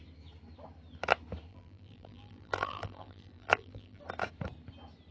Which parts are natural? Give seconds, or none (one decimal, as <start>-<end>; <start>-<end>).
0.0-1.5; 4.0-5.1